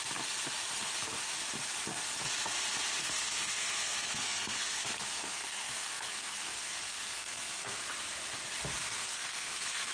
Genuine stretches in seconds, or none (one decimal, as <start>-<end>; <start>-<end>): 0.0-3.0; 7.8-9.0